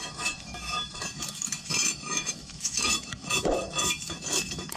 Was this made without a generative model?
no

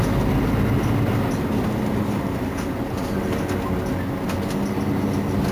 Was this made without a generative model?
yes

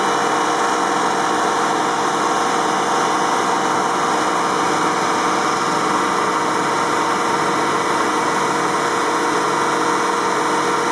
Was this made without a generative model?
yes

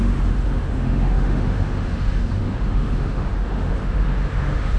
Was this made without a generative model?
no